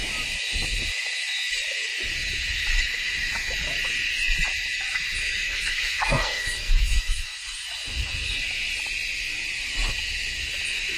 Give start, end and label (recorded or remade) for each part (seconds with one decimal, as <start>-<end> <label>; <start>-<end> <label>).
0.0-5.2 recorded; 5.2-7.4 remade; 7.4-11.0 recorded